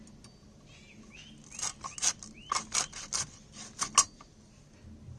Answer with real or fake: real